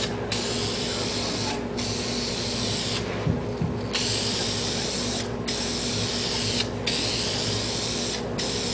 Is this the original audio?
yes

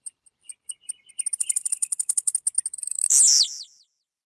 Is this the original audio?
yes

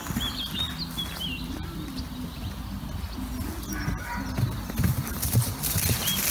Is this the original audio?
yes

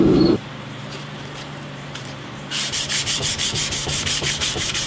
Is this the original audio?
no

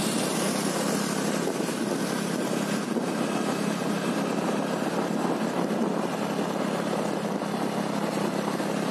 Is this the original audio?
yes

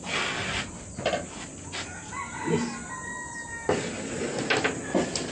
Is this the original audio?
yes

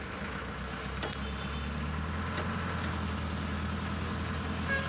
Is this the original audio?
yes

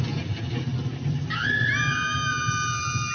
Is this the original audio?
yes